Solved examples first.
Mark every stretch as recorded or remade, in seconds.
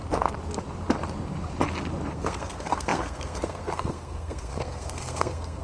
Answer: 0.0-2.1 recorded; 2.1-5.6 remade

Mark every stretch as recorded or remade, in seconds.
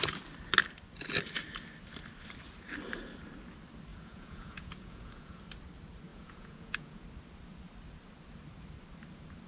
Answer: 0.0-3.9 recorded; 3.9-5.4 remade; 5.4-6.1 recorded; 6.1-7.0 remade; 7.0-9.5 recorded